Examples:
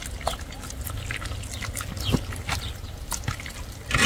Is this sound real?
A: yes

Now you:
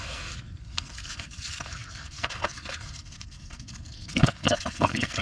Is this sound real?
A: no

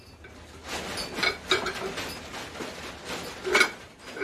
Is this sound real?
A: yes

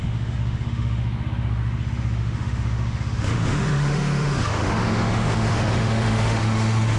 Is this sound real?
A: no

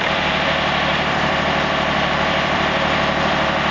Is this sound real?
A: no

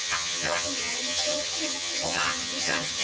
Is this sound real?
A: no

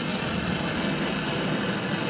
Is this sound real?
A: yes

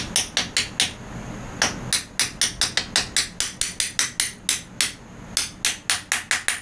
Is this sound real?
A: yes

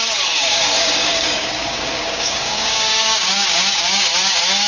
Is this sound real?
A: no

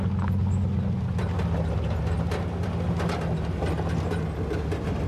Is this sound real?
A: yes